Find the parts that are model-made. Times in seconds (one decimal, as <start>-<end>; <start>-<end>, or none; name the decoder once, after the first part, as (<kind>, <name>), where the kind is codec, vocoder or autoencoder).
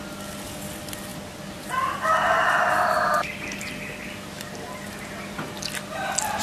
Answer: none